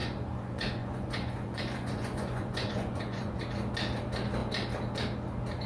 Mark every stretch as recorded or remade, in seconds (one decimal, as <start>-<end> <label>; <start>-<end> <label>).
0.0-3.4 remade; 3.4-5.7 recorded